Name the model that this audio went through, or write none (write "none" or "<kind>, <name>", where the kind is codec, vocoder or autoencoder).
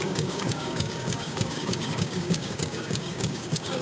codec, DAC